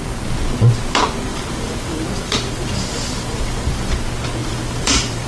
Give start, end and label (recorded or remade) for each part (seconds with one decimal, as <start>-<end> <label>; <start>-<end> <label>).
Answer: 0.0-1.3 recorded; 1.3-3.9 remade; 3.9-4.4 recorded; 4.4-5.3 remade